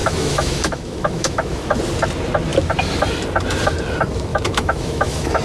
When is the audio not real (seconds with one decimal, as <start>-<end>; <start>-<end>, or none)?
0.0-1.8; 4.3-5.4